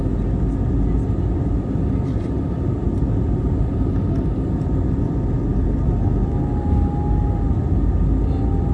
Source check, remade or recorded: recorded